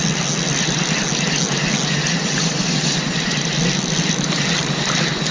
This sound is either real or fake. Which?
real